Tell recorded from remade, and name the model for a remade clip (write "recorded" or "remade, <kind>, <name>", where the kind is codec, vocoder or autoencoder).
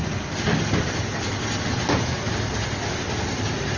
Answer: recorded